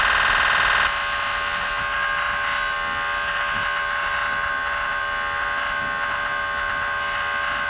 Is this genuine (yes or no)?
yes